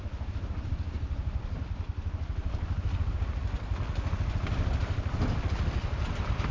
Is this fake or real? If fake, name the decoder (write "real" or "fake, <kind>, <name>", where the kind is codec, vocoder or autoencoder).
real